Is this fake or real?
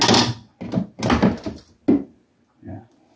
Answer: real